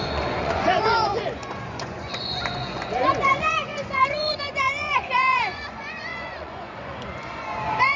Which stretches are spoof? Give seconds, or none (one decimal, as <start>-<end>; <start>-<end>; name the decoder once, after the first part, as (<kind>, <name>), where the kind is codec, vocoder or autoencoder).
0.0-8.0 (vocoder, Vocos)